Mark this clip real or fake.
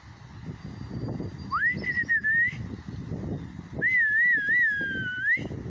real